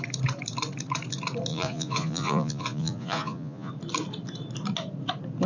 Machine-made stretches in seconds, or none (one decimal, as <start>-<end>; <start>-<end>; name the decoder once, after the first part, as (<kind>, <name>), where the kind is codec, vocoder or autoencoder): 1.5-3.7 (vocoder, Vocos)